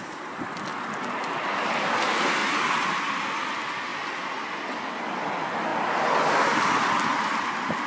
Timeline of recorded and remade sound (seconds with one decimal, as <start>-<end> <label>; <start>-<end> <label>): 0.0-7.9 recorded